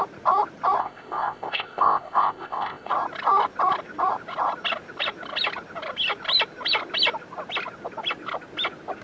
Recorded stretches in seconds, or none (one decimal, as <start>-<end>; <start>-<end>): 0.0-0.8; 2.9-9.0